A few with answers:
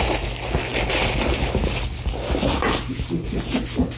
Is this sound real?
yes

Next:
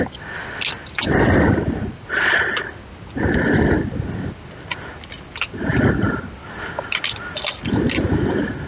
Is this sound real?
yes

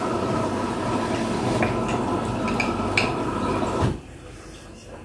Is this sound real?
yes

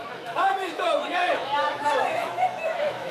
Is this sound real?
no